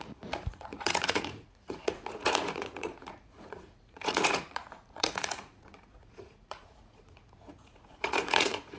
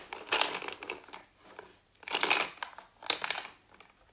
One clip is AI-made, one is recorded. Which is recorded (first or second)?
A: second